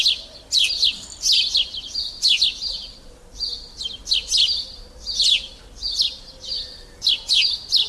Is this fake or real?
real